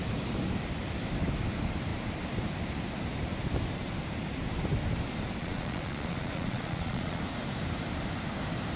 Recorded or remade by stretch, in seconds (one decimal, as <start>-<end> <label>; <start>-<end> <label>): 0.0-5.4 recorded; 5.4-7.2 remade; 7.2-8.8 recorded